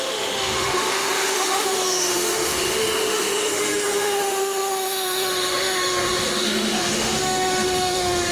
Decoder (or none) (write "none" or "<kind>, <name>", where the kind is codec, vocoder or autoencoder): autoencoder, DAC-VAE